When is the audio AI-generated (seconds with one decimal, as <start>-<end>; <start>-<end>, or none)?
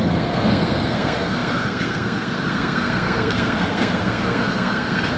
0.0-5.2